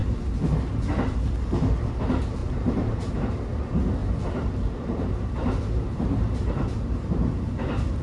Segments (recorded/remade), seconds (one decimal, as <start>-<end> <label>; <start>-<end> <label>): 0.0-2.4 recorded; 2.4-3.2 remade; 3.2-4.0 recorded; 4.0-8.0 remade